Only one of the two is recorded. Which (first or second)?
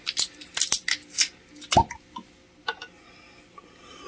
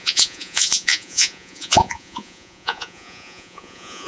first